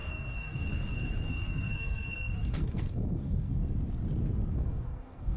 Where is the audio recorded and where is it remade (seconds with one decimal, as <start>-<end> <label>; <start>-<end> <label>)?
0.0-3.6 remade; 3.6-4.5 recorded; 4.5-5.4 remade